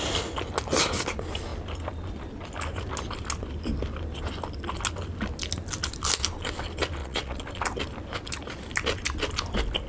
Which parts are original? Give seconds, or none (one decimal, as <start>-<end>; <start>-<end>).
0.0-7.0; 7.5-9.9